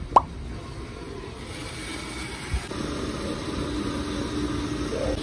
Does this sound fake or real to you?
real